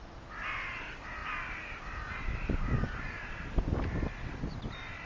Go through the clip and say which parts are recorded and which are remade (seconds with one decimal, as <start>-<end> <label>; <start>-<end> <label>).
0.0-5.1 recorded